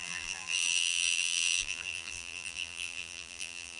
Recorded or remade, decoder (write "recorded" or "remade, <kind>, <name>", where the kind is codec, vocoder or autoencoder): remade, vocoder, BigVGAN v2